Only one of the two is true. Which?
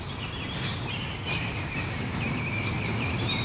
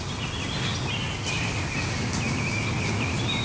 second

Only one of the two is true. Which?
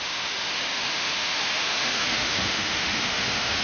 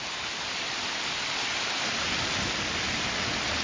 second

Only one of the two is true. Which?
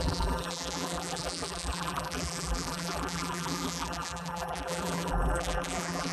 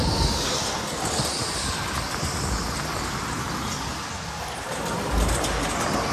second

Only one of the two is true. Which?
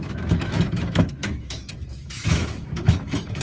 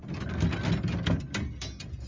second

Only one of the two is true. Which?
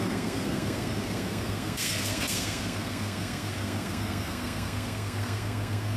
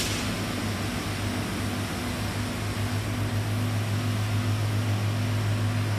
second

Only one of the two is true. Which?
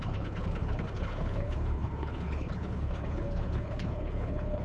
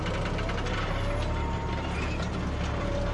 second